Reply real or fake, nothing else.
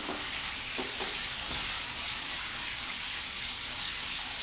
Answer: fake